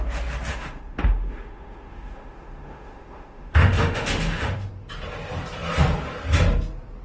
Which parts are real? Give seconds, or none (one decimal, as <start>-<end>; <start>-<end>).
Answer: 0.0-0.5; 4.7-7.0